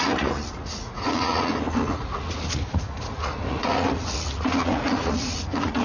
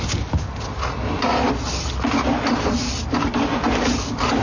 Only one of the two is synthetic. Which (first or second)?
first